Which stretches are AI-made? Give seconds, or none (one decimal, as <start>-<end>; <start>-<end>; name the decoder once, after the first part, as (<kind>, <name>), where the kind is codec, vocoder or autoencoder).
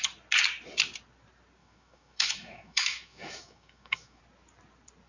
1.6-4.2 (autoencoder, DAC-VAE)